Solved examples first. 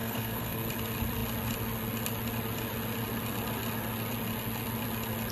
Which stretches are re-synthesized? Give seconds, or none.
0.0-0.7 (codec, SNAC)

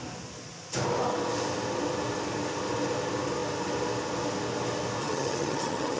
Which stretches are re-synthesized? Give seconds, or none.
5.0-6.0 (vocoder, HiFi-GAN)

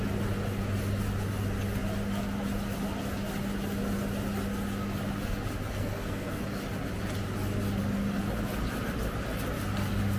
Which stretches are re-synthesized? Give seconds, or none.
5.7-6.4 (codec, SNAC)

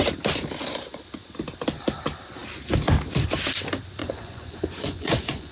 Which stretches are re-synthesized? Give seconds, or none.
4.0-5.5 (vocoder, Vocos)

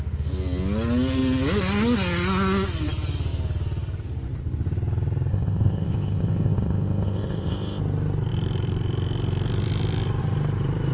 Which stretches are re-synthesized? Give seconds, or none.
5.3-7.8 (codec, ZipCodec)

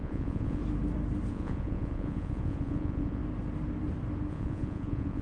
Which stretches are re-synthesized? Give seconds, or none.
0.0-0.6 (vocoder, Vocos); 1.3-3.2; 4.3-5.2